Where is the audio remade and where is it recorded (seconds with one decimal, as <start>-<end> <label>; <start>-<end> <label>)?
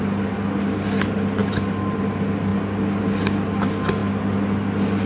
0.0-5.1 recorded